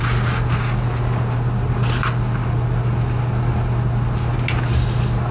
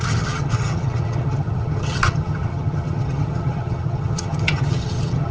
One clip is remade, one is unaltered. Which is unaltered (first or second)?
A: first